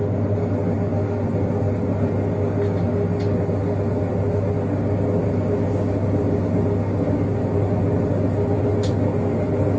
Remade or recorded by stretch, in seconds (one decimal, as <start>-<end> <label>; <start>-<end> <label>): 0.0-9.8 recorded